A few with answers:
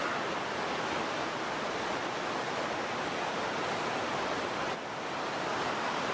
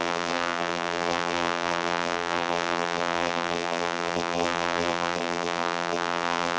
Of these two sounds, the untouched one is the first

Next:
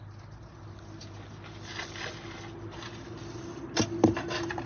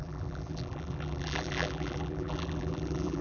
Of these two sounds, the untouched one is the first